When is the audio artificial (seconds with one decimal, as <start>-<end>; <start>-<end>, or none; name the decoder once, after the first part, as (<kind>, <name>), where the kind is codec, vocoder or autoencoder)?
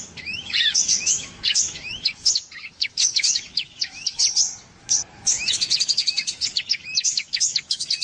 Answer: 0.0-4.2 (autoencoder, DAC-VAE); 5.1-8.0